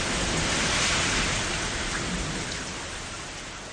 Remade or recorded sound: recorded